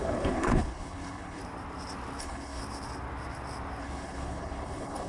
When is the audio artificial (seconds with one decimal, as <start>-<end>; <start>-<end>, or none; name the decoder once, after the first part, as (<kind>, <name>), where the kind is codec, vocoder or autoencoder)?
0.0-1.4 (codec, HILCodec); 2.2-2.6; 3.8-5.1